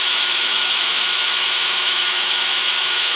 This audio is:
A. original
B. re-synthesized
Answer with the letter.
B